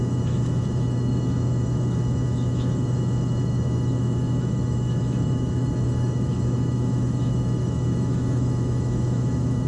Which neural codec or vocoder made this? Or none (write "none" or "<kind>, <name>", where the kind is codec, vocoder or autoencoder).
autoencoder, DAC-VAE